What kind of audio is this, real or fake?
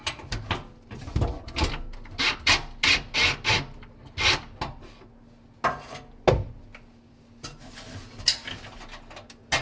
real